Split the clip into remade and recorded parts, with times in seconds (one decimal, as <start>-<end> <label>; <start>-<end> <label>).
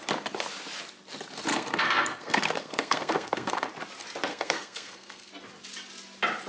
0.0-1.5 recorded; 1.5-3.7 remade; 3.7-4.3 recorded; 4.3-5.3 remade; 5.3-6.5 recorded